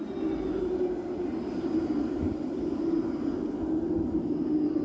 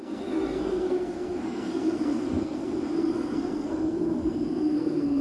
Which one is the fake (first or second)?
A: second